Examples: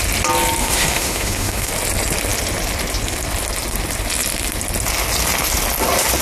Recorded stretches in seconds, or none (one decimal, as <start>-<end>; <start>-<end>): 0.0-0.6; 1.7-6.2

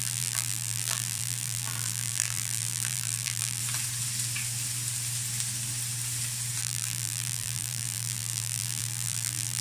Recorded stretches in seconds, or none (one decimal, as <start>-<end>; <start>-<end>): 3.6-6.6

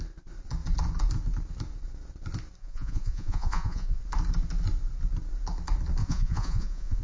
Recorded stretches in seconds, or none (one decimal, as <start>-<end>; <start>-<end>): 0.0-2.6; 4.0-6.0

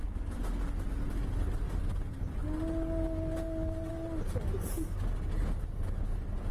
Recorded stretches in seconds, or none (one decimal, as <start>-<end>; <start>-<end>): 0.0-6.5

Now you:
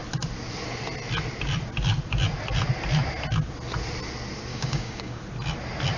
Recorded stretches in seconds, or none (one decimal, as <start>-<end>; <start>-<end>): 0.0-4.5; 5.2-6.0

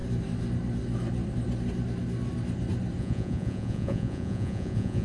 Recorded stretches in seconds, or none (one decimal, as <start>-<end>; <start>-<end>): 0.0-3.0